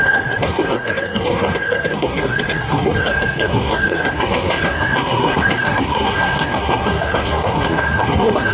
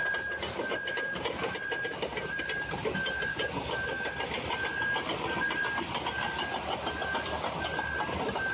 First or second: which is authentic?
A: second